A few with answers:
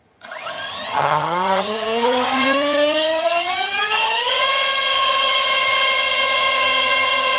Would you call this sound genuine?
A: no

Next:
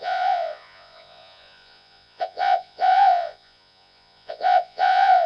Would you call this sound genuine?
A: no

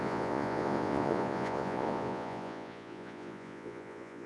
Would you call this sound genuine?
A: no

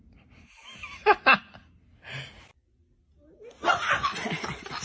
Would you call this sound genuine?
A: yes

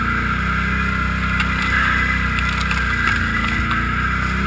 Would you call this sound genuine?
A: yes